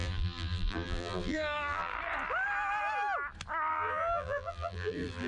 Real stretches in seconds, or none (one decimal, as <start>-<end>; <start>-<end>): 1.9-3.7